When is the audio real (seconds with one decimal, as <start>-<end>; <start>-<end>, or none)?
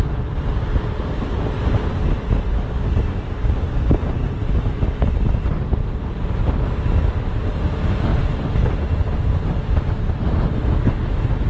0.0-11.5